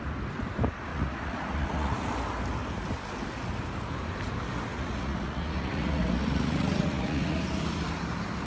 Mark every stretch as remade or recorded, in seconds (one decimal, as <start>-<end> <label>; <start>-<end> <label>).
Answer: 0.0-0.9 recorded; 0.9-2.1 remade; 2.1-4.7 recorded; 4.7-7.4 remade; 7.4-8.5 recorded